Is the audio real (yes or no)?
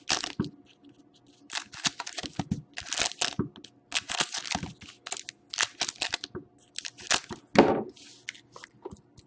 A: yes